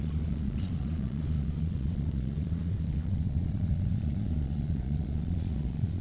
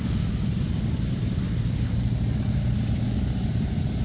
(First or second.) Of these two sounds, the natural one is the second